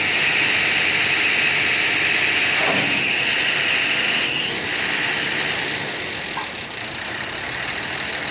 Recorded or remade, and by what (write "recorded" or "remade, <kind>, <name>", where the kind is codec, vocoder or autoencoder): recorded